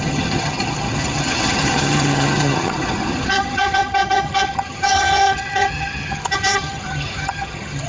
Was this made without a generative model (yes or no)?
no